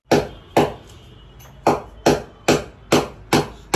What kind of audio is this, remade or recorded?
recorded